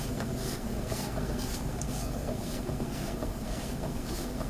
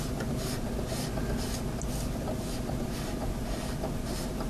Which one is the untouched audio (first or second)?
second